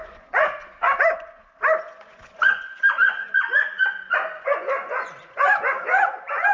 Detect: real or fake fake